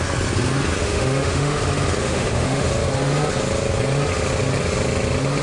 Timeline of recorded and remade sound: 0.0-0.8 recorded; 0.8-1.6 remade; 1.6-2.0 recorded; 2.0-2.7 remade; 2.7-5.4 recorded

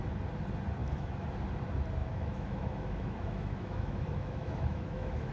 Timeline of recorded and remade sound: 0.0-0.8 recorded; 0.8-1.3 remade; 1.3-2.0 recorded; 2.0-5.3 remade

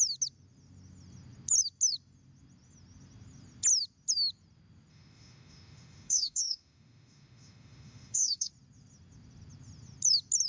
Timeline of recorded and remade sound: 0.0-4.9 recorded; 4.9-8.5 remade; 8.5-10.5 recorded

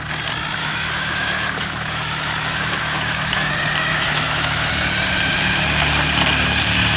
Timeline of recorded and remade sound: 0.0-0.6 recorded; 0.6-3.5 remade; 3.5-3.9 recorded; 3.9-4.7 remade; 4.7-7.0 recorded

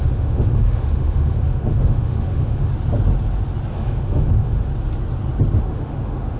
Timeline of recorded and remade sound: 0.0-2.7 remade; 2.7-3.7 recorded; 3.7-4.7 remade; 4.7-5.6 recorded; 5.6-6.4 remade

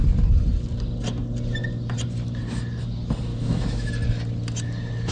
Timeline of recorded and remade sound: 0.0-3.3 recorded; 3.3-3.9 remade; 3.9-5.1 recorded

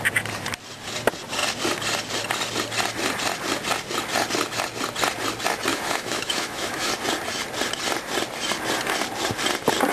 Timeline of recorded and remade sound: 0.0-5.7 recorded; 5.7-6.9 remade; 6.9-9.9 recorded

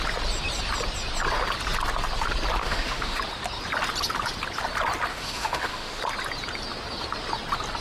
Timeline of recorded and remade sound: 0.0-2.6 recorded; 2.6-3.2 remade; 3.2-5.1 recorded; 5.1-6.0 remade; 6.0-7.8 recorded